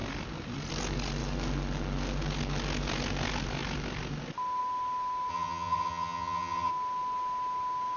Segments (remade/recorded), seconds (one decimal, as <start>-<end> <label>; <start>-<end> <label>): 0.0-5.3 recorded; 5.3-6.7 remade; 6.7-8.0 recorded